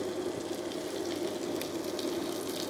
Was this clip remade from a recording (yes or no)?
no